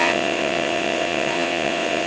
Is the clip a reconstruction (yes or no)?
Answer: yes